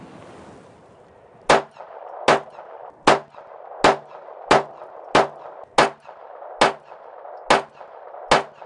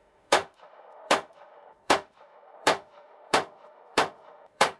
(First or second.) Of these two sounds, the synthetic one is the second